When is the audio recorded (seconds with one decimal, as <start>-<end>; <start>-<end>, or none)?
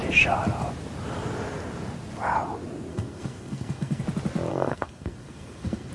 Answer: 0.0-2.9; 4.0-4.5